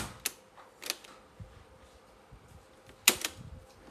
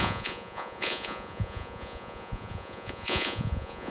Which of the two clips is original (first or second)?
first